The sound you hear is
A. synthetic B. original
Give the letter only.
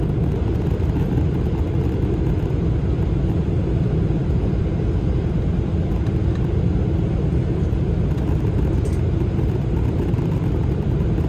B